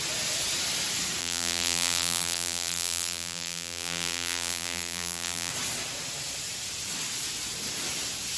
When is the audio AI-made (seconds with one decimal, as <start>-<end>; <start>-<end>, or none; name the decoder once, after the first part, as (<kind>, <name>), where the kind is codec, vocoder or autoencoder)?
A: 1.2-5.5 (vocoder, BigVGAN v2)